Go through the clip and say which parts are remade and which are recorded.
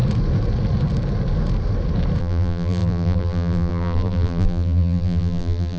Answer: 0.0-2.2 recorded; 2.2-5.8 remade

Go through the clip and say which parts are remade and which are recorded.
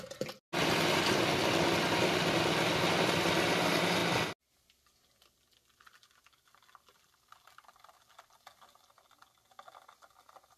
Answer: 0.0-10.6 recorded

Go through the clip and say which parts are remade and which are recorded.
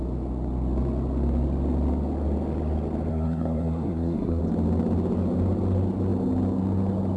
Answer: 0.0-3.1 recorded; 3.1-4.4 remade; 4.4-7.2 recorded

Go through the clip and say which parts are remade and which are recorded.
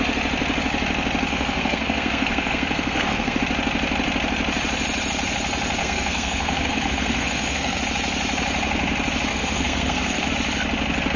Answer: 0.0-1.3 recorded; 1.3-3.4 remade; 3.4-5.8 recorded; 5.8-7.8 remade; 7.8-9.3 recorded; 9.3-10.3 remade; 10.3-11.2 recorded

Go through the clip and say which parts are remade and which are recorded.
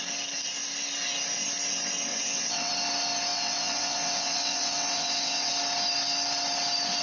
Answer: 0.0-2.1 recorded; 2.1-2.7 remade; 2.7-3.3 recorded; 3.3-5.5 remade; 5.5-7.0 recorded